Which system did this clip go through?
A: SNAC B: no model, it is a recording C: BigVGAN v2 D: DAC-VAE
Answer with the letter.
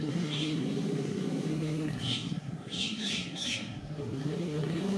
A